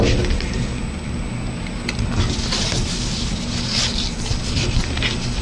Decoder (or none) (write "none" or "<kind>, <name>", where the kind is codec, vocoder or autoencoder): none